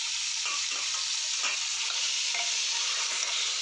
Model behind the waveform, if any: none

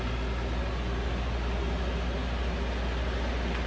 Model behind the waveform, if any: none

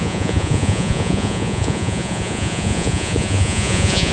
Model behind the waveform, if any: vocoder, Vocos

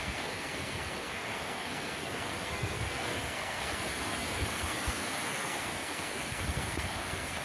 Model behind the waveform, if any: codec, SNAC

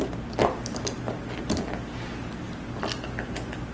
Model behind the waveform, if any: none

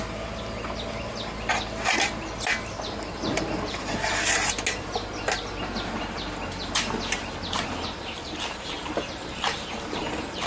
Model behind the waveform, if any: none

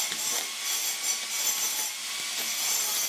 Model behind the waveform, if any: none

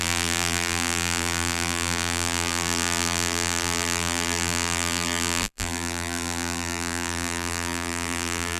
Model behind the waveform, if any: vocoder, BigVGAN v2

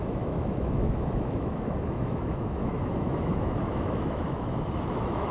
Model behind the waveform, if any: autoencoder, DAC-VAE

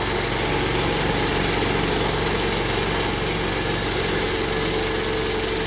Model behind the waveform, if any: none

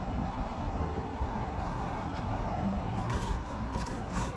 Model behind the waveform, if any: codec, SNAC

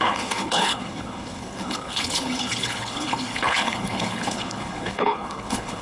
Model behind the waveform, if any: codec, HILCodec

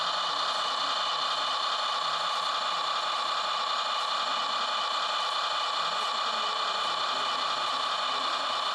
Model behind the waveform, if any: none